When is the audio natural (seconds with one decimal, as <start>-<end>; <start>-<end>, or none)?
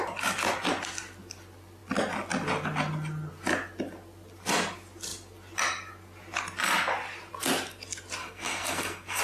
0.0-8.2